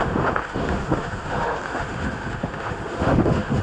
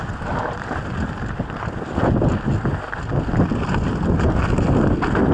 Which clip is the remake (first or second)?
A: first